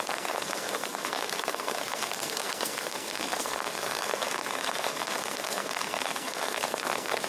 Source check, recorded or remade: remade